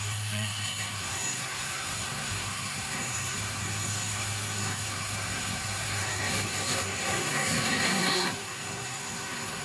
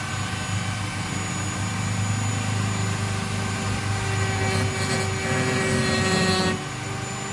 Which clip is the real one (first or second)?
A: second